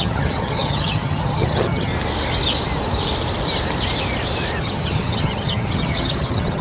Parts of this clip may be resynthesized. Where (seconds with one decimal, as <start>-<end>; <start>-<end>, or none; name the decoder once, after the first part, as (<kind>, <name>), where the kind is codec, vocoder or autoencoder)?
0.0-1.9 (vocoder, HiFi-GAN); 4.6-6.6